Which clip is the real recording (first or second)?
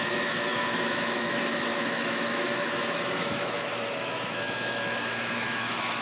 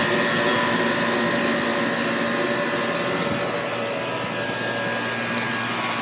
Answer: second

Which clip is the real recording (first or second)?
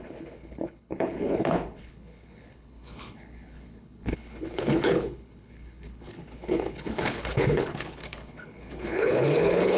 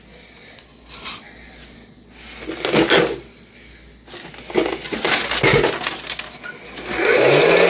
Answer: second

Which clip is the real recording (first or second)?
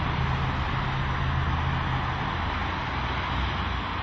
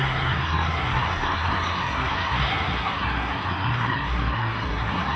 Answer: first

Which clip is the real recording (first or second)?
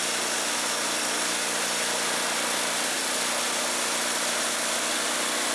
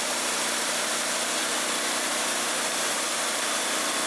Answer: first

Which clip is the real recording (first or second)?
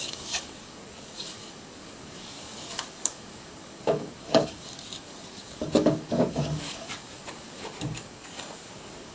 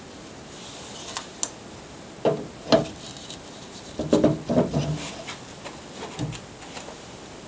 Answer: second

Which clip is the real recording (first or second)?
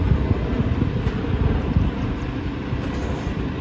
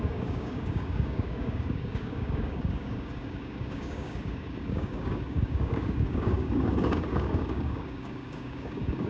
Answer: first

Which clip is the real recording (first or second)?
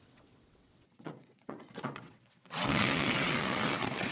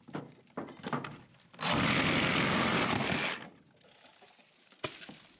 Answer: second